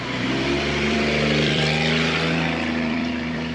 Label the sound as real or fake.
fake